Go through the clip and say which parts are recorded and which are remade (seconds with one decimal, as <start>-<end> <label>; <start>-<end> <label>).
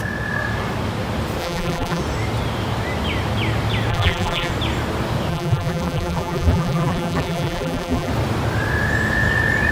0.0-1.4 recorded; 1.4-2.0 remade; 2.0-3.9 recorded; 3.9-4.5 remade; 4.5-5.3 recorded; 5.3-8.1 remade; 8.1-9.7 recorded